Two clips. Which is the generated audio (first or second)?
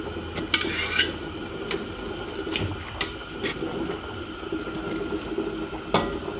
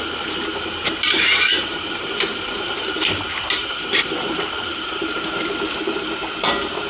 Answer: second